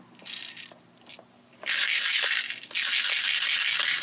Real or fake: real